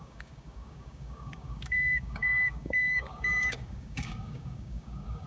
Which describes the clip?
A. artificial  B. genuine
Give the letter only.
A